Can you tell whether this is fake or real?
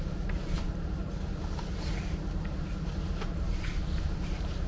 fake